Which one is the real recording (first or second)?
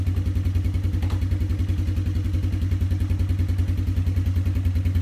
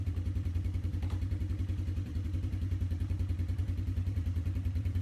first